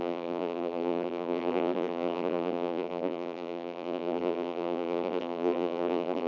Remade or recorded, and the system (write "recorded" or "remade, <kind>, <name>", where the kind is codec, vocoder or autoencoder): remade, vocoder, BigVGAN v2